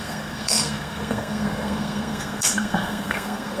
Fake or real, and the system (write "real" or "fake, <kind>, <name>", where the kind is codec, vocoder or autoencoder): fake, codec, SNAC